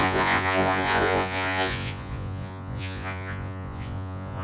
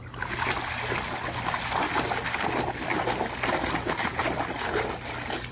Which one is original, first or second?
second